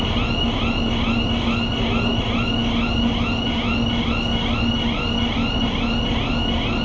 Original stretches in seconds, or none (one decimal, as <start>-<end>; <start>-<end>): 0.0-6.8